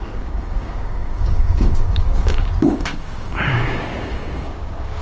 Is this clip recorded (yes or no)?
no